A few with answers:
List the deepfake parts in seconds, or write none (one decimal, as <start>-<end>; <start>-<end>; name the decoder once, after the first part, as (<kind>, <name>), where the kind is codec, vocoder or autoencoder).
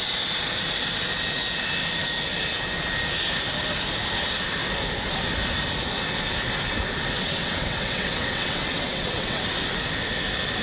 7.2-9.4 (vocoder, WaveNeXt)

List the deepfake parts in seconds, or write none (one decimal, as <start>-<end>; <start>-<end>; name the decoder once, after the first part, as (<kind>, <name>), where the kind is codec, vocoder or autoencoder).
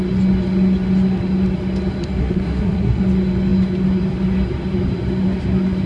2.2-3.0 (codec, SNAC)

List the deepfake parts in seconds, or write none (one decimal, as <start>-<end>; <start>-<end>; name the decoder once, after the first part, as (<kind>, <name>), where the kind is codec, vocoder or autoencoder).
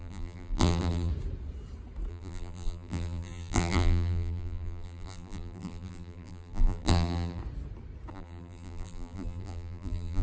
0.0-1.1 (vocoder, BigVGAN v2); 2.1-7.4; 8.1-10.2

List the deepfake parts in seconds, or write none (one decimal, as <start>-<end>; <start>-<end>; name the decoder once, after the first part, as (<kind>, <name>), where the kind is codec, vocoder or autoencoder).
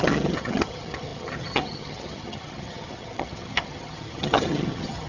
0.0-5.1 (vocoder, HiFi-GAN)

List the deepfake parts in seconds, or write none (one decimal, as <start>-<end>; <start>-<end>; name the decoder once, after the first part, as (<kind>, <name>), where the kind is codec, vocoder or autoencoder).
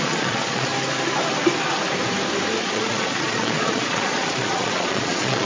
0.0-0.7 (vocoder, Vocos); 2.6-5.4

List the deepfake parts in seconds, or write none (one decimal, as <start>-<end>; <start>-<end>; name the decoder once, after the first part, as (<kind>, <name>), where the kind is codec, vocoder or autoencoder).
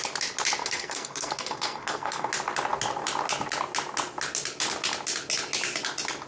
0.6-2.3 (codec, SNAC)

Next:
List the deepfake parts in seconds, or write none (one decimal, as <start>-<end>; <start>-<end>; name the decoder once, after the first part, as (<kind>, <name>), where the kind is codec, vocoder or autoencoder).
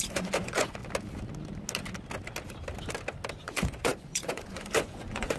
0.0-0.8 (vocoder, Vocos); 3.3-5.4